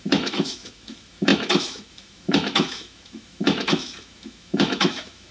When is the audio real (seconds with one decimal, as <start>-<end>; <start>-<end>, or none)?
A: none